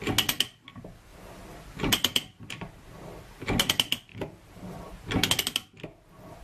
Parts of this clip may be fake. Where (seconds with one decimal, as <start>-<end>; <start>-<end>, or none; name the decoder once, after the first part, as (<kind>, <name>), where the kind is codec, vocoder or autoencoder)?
4.1-4.8 (vocoder, BigVGAN v2)